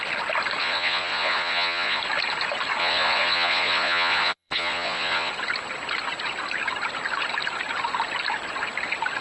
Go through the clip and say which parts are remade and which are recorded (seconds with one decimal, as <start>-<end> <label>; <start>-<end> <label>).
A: 0.0-0.6 recorded; 0.6-2.0 remade; 2.0-2.8 recorded; 2.8-5.3 remade; 5.3-9.2 recorded